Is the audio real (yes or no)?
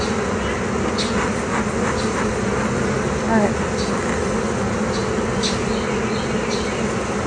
yes